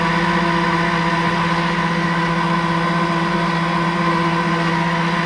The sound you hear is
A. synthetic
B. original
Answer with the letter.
B